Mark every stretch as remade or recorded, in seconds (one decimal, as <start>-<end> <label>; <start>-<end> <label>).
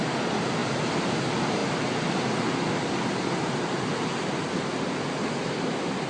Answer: 0.0-6.1 recorded